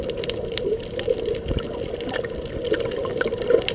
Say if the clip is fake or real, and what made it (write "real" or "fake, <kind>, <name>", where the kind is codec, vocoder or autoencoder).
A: real